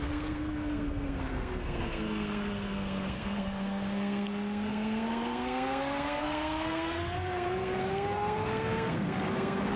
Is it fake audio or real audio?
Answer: fake